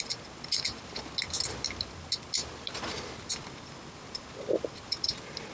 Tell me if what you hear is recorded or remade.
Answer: recorded